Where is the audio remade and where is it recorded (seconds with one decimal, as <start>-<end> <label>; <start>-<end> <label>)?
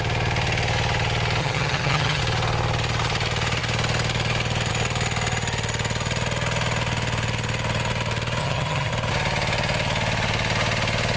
0.0-1.4 recorded; 1.4-2.2 remade; 2.2-8.4 recorded; 8.4-8.9 remade; 8.9-11.2 recorded